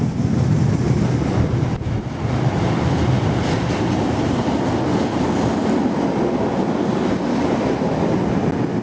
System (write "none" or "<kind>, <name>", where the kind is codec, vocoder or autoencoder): none